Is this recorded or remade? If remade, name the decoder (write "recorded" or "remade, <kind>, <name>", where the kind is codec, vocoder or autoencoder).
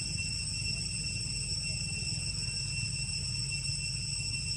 recorded